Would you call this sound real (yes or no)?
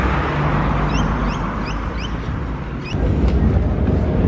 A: yes